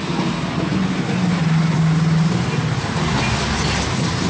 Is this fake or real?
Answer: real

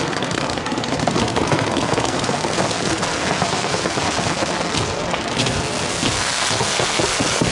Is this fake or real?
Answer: fake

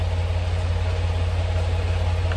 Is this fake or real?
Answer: real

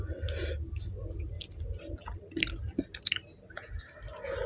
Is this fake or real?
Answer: real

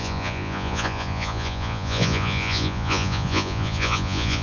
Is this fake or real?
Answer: fake